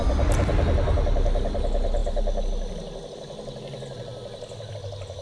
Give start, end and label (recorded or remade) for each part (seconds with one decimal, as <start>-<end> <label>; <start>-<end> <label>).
0.0-5.2 recorded

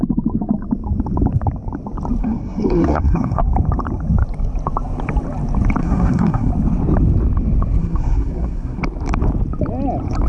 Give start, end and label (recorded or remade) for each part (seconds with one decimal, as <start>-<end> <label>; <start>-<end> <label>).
0.0-2.2 recorded; 2.2-3.4 remade; 3.4-5.8 recorded; 5.8-6.5 remade; 6.5-7.8 recorded; 7.8-8.8 remade; 8.8-10.3 recorded